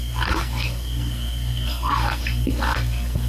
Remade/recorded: remade